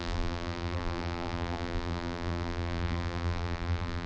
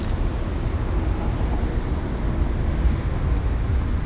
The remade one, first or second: first